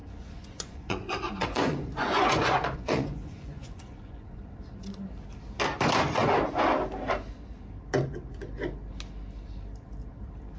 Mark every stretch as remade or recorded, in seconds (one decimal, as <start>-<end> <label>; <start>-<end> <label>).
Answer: 0.0-4.5 remade; 4.5-10.6 recorded